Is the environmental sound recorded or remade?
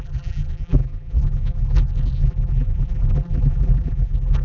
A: remade